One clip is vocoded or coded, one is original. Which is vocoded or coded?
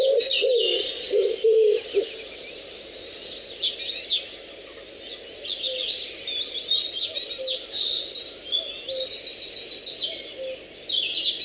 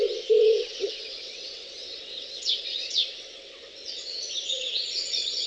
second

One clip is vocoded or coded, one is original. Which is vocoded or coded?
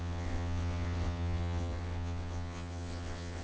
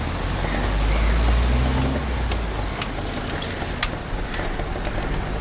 first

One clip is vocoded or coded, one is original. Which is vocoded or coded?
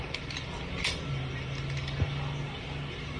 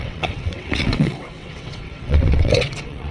second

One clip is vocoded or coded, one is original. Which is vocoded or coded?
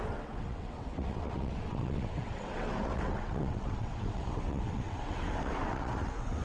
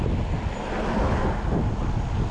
first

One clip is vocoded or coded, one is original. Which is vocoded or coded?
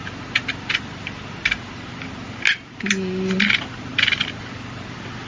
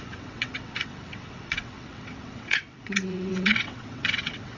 second